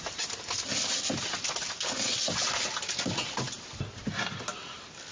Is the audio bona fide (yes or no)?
yes